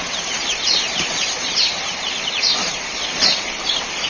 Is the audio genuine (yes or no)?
no